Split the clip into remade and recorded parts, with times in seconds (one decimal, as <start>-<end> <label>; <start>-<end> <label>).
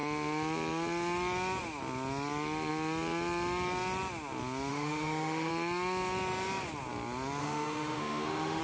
0.0-4.7 recorded; 4.7-5.5 remade; 5.5-7.4 recorded; 7.4-8.6 remade